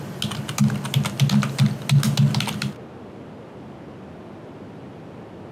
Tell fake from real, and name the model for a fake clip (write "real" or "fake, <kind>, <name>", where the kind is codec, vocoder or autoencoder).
real